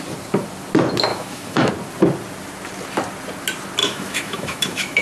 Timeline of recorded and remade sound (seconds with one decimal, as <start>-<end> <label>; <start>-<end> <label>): 0.0-1.1 recorded; 1.1-1.7 remade; 1.7-3.8 recorded; 3.8-5.0 remade